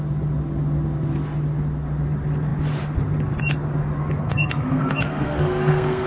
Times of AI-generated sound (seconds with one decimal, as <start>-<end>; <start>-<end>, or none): 4.2-6.1